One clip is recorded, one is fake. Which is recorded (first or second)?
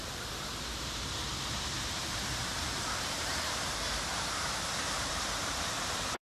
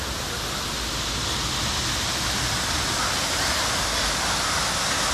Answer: second